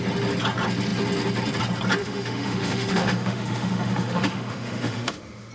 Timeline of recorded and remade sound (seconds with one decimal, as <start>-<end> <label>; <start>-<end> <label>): 0.0-2.0 recorded; 2.0-5.5 remade